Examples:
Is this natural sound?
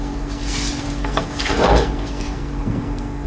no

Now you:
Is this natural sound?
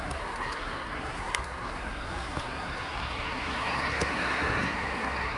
no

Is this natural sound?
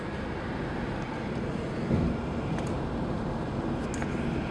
yes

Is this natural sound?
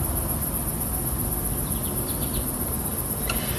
yes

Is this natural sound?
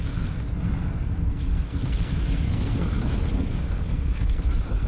no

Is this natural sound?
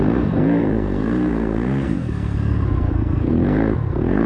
no